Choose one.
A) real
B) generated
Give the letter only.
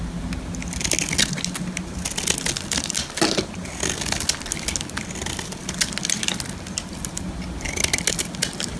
A